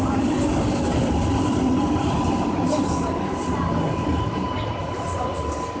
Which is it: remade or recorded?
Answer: remade